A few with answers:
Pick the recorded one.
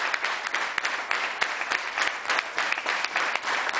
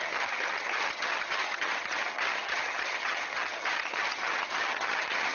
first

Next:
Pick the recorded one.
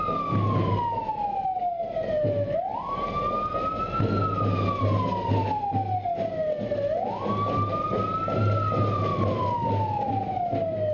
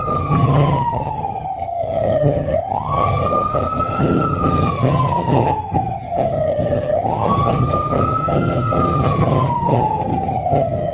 first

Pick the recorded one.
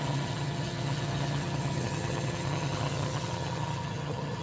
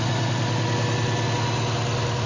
second